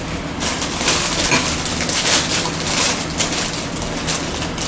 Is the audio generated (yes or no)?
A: no